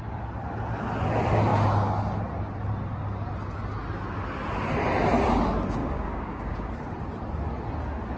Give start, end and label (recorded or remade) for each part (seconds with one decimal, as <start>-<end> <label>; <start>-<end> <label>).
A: 0.0-5.8 recorded; 5.8-6.7 remade; 6.7-8.2 recorded